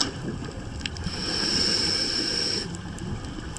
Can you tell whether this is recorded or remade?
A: recorded